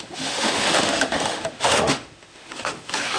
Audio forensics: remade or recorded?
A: remade